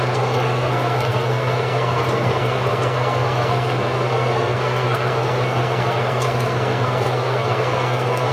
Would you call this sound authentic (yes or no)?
no